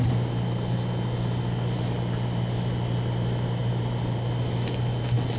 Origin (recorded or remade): recorded